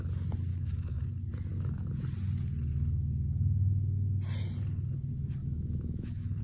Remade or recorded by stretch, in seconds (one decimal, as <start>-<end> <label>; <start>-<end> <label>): 0.0-0.5 recorded; 0.5-1.1 remade; 1.1-5.4 recorded; 5.4-6.4 remade